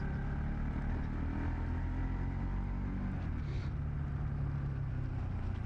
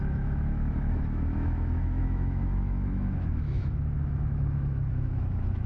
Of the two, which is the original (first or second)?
first